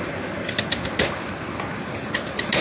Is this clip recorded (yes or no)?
yes